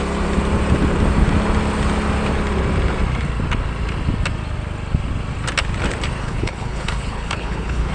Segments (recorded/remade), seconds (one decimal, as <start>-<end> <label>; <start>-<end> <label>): 0.0-6.2 recorded; 6.2-7.9 remade